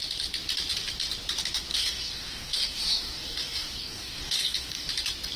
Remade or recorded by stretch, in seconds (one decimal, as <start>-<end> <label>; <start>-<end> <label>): 0.0-1.7 recorded; 1.7-4.9 remade; 4.9-5.4 recorded